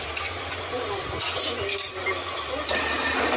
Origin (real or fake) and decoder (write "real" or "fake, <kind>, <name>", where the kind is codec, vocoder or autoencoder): real